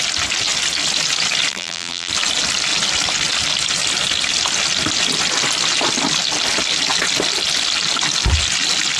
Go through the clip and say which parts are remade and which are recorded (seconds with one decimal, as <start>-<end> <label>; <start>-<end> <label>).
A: 0.0-1.5 recorded; 1.5-2.1 remade; 2.1-9.0 recorded

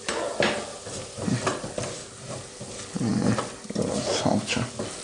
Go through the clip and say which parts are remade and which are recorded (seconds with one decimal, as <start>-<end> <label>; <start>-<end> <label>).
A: 0.0-0.7 recorded; 0.7-1.2 remade; 1.2-5.0 recorded

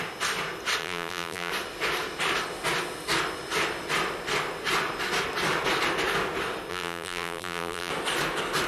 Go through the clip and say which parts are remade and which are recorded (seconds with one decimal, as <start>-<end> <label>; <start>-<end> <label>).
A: 0.0-0.8 recorded; 0.8-1.5 remade; 1.5-6.7 recorded; 6.7-7.9 remade; 7.9-8.7 recorded

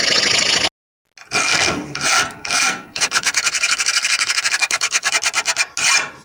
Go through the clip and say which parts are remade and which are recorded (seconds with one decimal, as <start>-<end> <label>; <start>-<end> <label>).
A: 0.0-1.4 recorded; 1.4-5.1 remade; 5.1-6.2 recorded

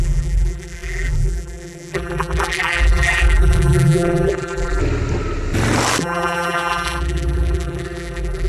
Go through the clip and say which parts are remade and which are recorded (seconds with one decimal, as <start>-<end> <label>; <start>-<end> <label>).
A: 0.0-4.8 remade; 4.8-6.0 recorded; 6.0-8.5 remade

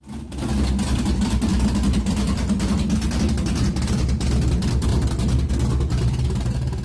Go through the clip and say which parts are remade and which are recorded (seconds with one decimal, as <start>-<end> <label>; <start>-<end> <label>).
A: 0.0-6.8 recorded